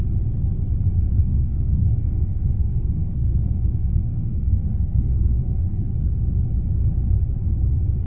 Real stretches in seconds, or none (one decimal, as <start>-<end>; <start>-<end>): 0.0-1.2; 5.9-8.1